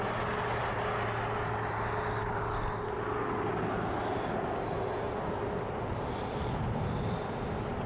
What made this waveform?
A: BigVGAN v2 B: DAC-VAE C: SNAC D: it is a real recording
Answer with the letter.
D